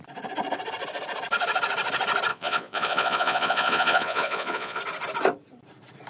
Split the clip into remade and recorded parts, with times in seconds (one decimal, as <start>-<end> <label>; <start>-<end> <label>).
0.0-2.3 recorded; 2.3-4.8 remade; 4.8-6.1 recorded